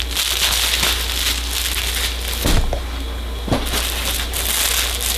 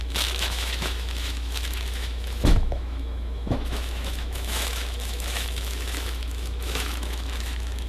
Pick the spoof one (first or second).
second